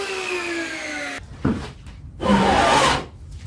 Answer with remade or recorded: recorded